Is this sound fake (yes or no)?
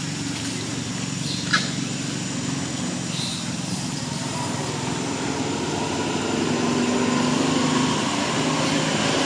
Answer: no